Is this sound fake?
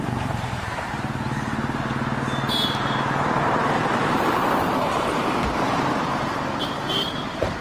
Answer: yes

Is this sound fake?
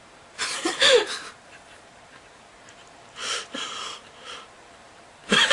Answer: yes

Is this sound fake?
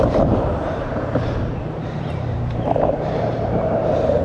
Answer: yes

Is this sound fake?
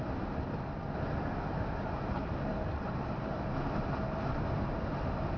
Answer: yes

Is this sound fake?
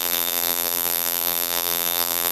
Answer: yes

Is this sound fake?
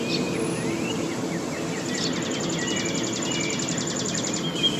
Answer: no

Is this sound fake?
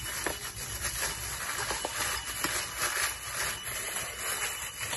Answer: no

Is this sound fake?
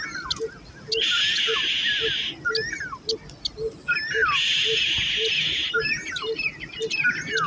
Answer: no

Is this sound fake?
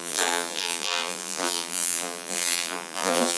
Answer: yes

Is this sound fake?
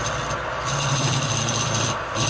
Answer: yes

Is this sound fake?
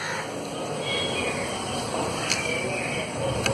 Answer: no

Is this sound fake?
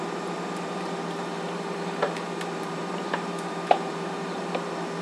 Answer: yes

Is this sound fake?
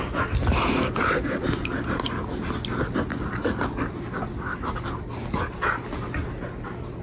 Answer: no